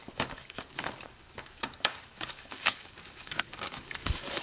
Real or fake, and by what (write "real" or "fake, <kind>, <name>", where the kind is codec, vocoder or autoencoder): fake, codec, DAC